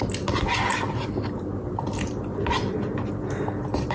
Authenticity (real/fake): real